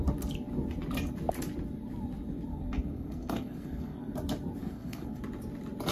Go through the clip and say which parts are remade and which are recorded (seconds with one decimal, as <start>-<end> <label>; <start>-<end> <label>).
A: 0.0-2.5 recorded; 2.5-4.1 remade; 4.1-4.6 recorded; 4.6-5.2 remade; 5.2-5.9 recorded